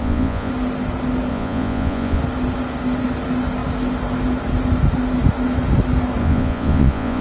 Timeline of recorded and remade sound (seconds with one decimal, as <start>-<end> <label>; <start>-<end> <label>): 0.0-0.5 remade; 0.5-1.3 recorded; 1.3-2.2 remade; 2.2-6.2 recorded; 6.2-7.2 remade

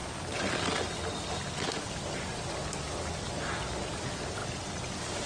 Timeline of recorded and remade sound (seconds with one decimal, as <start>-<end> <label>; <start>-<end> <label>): 0.0-5.3 recorded

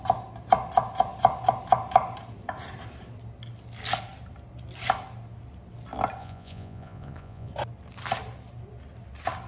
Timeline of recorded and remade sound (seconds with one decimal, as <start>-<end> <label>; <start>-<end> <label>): 0.0-6.2 recorded; 6.2-7.5 remade; 7.5-9.5 recorded

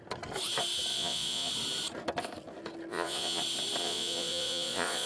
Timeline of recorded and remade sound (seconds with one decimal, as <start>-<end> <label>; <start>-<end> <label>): 0.0-0.9 recorded; 0.9-1.5 remade; 1.5-2.9 recorded; 2.9-3.4 remade; 3.4-3.8 recorded; 3.8-5.1 remade